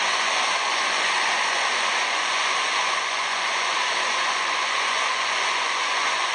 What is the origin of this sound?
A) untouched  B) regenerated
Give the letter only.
B